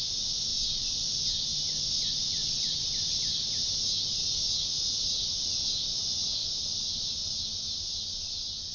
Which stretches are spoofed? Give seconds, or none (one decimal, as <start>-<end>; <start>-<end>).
1.5-3.6; 6.4-7.2